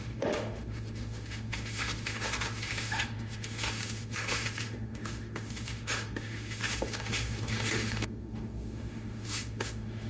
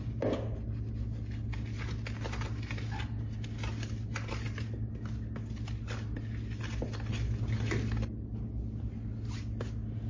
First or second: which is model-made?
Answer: first